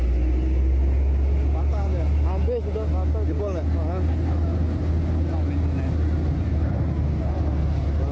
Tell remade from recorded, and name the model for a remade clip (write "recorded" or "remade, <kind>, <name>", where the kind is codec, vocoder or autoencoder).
recorded